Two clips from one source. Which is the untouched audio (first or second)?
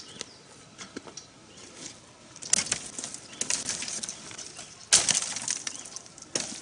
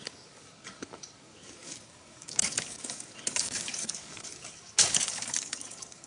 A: first